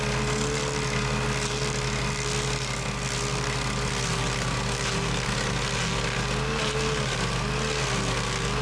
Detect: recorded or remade recorded